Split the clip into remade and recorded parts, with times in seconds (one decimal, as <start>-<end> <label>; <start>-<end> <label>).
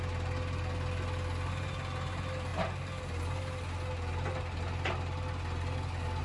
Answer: 0.0-6.2 recorded